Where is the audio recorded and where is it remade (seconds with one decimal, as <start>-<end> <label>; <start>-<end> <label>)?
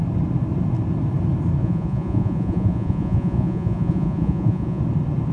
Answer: 0.0-1.6 recorded; 1.6-4.8 remade; 4.8-5.3 recorded